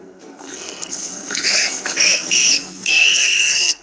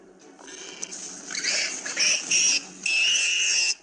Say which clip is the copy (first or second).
first